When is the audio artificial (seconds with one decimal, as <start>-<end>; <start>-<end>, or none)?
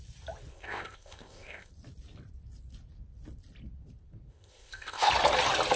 0.5-1.7; 4.3-5.1